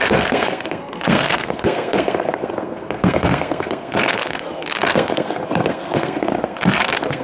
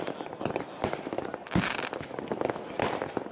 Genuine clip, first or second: second